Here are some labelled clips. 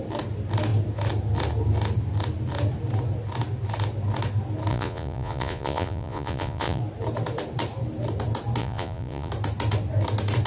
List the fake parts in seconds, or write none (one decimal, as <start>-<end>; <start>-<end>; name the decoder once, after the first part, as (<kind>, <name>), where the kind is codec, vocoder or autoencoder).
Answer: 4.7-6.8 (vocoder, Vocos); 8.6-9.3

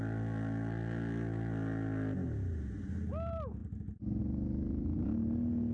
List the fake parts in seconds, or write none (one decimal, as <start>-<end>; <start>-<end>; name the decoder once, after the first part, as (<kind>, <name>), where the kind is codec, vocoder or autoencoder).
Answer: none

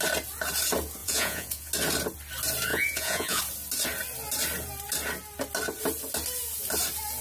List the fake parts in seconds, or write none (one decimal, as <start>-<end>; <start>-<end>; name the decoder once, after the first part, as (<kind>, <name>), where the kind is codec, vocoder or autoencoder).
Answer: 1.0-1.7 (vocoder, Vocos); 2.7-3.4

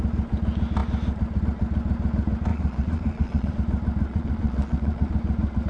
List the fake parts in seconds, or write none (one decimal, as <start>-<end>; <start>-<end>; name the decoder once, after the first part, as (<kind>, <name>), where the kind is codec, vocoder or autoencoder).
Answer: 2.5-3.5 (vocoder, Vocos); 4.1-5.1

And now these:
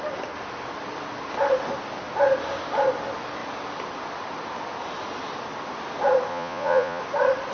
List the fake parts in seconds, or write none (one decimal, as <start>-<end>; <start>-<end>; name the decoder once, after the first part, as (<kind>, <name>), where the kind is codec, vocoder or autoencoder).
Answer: 6.3-7.0 (vocoder, Vocos)